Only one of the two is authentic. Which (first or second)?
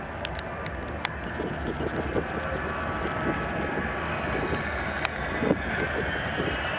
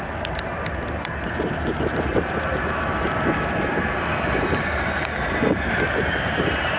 first